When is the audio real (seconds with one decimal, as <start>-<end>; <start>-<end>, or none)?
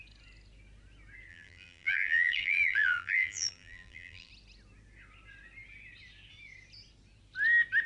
0.0-1.3; 4.3-7.9